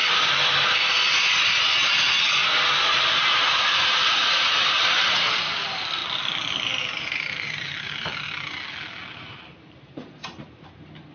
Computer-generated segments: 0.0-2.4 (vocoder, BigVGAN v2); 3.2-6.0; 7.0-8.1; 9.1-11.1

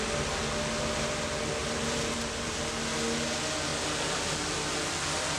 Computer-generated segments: 1.6-2.6 (vocoder, BigVGAN v2)